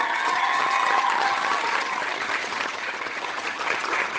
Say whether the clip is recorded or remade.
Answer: remade